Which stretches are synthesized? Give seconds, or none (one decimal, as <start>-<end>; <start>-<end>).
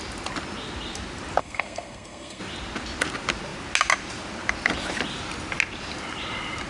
1.4-2.4